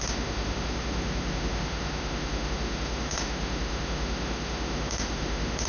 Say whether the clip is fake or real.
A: fake